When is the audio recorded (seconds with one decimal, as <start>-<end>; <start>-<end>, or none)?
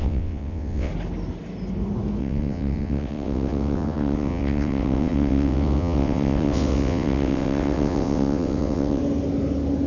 0.9-2.2; 9.0-9.9